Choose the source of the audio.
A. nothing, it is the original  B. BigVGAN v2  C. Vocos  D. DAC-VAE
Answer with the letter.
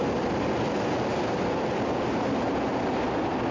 A